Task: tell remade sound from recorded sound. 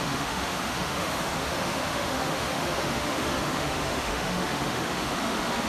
remade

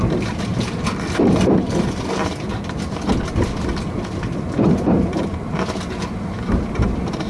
remade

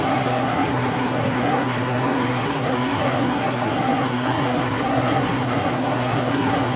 remade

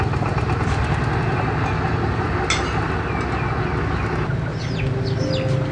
recorded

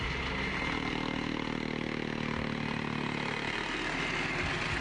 recorded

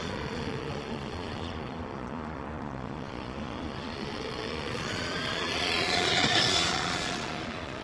remade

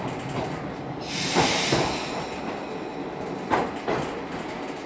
recorded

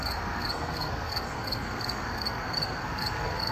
remade